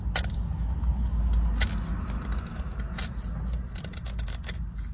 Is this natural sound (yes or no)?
yes